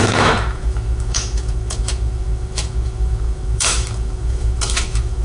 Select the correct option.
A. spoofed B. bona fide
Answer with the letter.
A